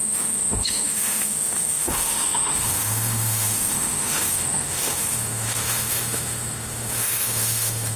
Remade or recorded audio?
remade